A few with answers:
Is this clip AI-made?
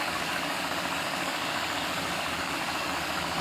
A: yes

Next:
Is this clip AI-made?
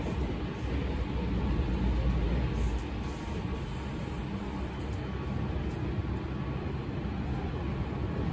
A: no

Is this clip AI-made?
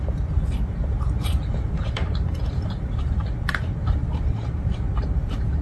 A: yes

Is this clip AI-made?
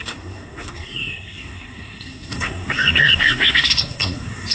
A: yes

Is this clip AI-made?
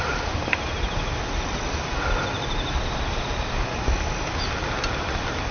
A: no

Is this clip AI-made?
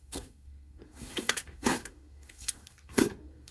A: yes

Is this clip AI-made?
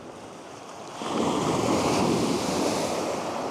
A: no